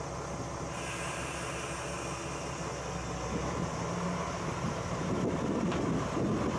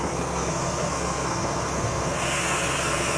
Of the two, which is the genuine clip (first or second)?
first